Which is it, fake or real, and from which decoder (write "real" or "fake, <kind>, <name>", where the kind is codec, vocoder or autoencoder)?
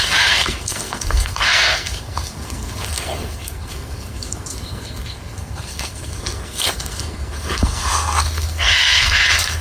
fake, codec, SNAC